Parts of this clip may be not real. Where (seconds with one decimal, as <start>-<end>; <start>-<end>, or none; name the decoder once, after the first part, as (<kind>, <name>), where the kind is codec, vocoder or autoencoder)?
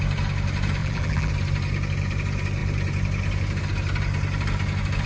0.8-1.3 (vocoder, BigVGAN v2)